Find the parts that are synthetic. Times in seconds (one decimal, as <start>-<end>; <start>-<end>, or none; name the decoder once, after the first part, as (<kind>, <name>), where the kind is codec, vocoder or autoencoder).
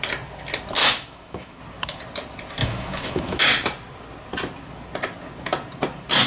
0.8-1.6 (autoencoder, DAC-VAE); 2.6-3.4